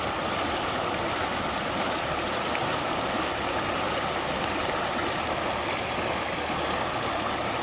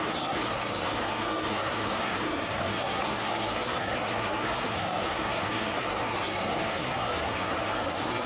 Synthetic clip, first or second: second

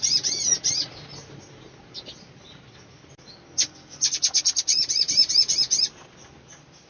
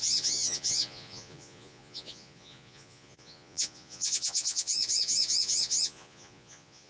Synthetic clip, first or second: second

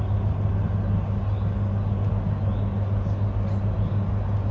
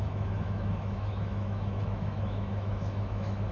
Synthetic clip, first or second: second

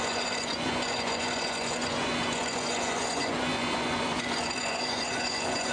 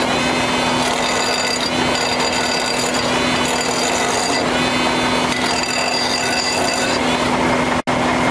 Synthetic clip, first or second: first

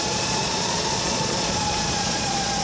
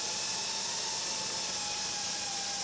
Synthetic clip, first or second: first